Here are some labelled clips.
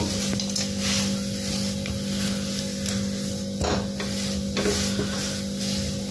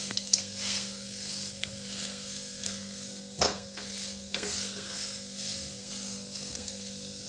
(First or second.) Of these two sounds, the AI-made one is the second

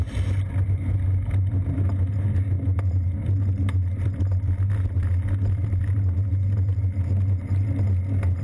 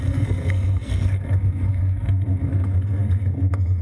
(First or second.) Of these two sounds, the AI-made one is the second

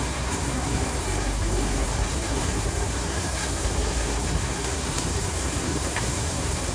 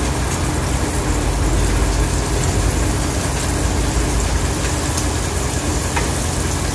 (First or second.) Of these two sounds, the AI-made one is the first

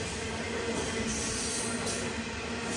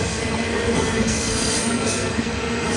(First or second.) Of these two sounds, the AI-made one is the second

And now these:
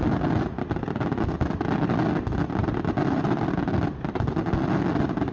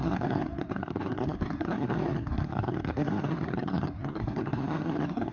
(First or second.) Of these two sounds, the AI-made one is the second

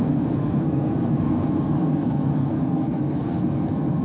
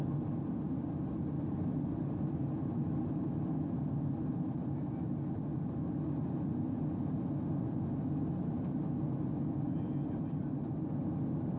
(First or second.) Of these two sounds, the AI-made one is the first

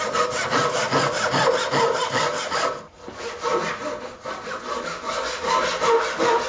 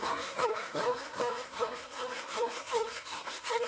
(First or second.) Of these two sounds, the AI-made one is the second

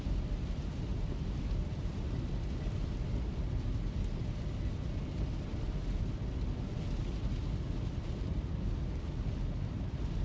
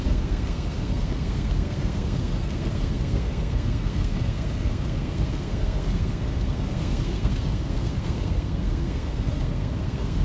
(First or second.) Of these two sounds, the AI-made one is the second